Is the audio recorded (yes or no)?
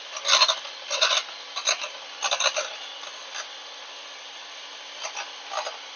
yes